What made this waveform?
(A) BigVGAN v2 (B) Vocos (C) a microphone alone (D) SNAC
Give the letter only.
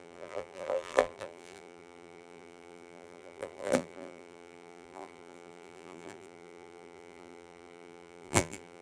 A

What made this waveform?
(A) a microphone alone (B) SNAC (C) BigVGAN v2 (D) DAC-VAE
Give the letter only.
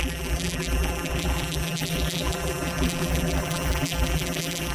C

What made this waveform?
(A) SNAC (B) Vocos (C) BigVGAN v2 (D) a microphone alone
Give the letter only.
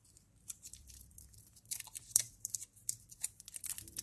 C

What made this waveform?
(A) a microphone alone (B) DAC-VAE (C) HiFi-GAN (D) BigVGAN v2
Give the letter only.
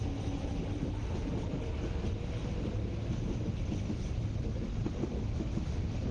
A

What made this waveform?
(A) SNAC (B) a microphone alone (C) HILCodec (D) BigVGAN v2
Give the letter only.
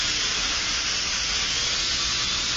B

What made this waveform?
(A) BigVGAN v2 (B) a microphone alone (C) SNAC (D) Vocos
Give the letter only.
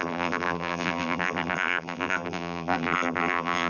A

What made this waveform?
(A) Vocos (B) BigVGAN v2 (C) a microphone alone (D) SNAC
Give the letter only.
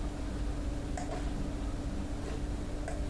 C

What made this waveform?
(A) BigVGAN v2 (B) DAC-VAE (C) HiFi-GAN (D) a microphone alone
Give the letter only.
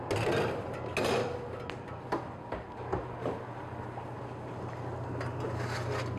D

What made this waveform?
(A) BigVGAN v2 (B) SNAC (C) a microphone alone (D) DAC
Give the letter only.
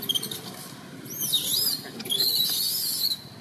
A